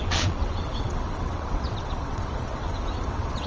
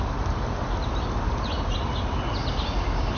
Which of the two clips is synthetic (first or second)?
first